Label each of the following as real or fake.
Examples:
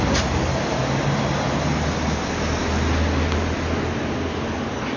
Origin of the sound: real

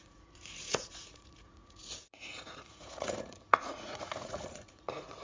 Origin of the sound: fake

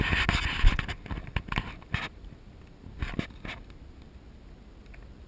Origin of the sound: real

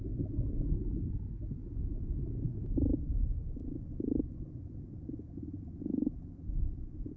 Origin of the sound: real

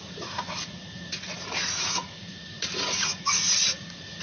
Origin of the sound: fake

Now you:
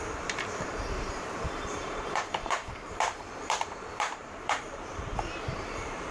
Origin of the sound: fake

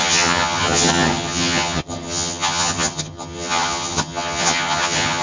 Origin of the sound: fake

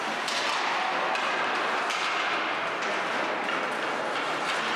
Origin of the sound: real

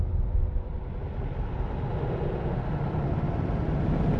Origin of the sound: real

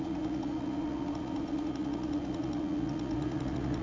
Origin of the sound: fake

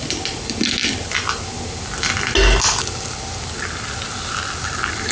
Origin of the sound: real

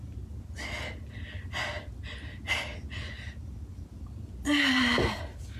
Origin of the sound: real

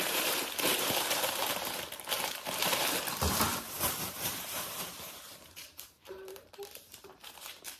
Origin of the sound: fake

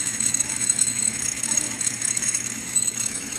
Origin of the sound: fake